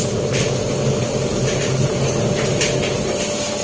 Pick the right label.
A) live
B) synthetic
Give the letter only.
A